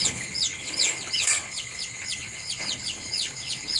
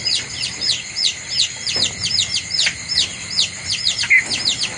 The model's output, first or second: first